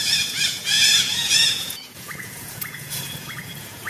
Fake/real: fake